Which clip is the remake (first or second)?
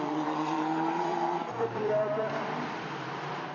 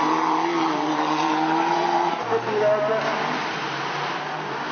first